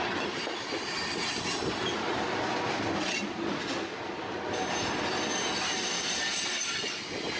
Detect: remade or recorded recorded